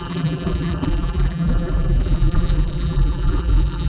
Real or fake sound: fake